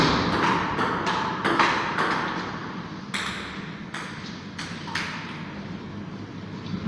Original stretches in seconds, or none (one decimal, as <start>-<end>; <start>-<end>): 0.0-6.9